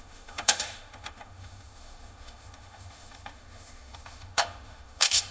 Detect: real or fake fake